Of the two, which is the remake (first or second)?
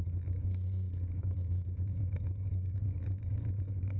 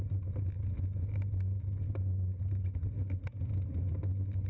first